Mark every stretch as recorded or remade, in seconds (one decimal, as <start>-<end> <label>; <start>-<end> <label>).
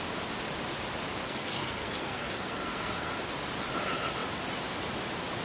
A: 0.0-1.2 recorded; 1.2-3.1 remade; 3.1-5.4 recorded